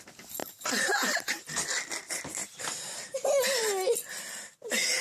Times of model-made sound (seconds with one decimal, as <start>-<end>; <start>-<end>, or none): 0.4-1.5; 2.4-3.6